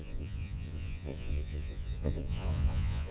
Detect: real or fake fake